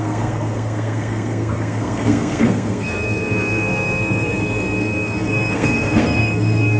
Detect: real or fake fake